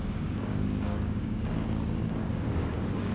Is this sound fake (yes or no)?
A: yes